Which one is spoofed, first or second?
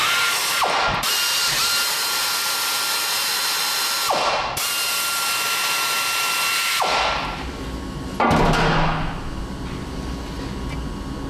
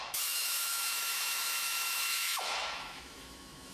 second